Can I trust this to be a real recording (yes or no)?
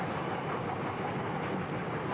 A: yes